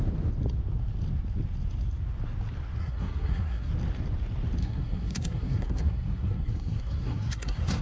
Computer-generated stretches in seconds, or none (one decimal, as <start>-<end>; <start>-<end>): 2.8-3.7; 4.6-7.8